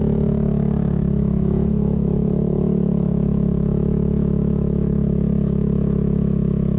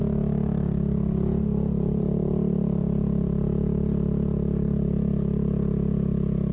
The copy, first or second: first